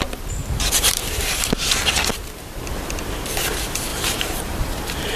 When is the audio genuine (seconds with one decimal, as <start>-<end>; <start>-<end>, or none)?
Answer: 0.0-0.4; 1.9-3.9; 4.7-5.2